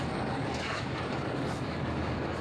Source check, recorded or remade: remade